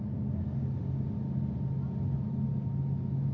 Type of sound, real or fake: real